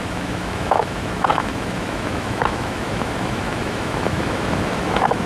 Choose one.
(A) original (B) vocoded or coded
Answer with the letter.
B